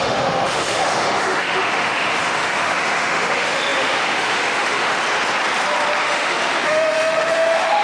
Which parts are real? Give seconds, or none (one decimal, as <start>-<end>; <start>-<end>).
4.9-6.0